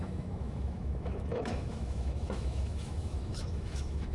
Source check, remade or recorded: remade